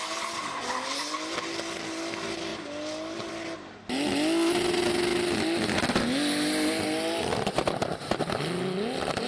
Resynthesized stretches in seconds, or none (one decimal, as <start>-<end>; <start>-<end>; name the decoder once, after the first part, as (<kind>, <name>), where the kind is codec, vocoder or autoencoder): 2.5-3.3 (vocoder, BigVGAN v2)

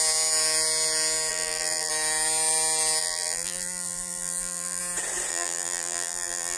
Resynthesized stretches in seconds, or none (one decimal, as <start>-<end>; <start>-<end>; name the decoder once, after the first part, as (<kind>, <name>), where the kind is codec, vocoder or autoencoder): 1.3-1.9 (vocoder, BigVGAN v2); 3.0-4.8; 5.3-6.6

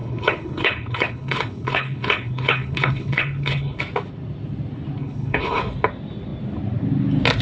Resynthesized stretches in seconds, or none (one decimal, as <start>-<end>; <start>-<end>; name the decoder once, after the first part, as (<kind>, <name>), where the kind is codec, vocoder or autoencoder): 0.0-3.8 (codec, HILCodec); 5.0-5.6

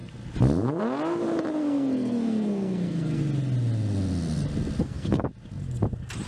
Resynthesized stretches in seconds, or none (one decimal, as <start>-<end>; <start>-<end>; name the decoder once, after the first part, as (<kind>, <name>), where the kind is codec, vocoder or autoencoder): 1.6-3.2 (codec, SNAC); 4.8-5.3

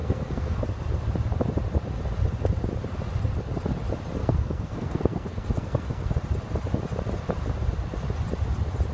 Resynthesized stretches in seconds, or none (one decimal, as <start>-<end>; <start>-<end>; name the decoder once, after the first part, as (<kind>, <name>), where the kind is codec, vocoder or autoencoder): 0.0-0.6 (codec, SNAC); 4.2-6.1